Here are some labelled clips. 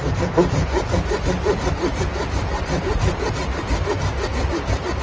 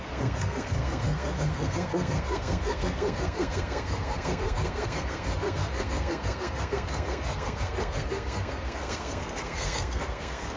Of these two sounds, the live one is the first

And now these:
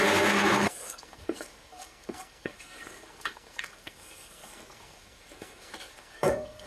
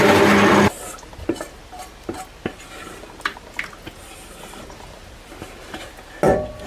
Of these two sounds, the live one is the second